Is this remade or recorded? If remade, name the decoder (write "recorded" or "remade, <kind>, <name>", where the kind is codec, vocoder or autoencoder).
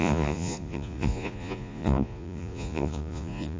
remade, vocoder, Vocos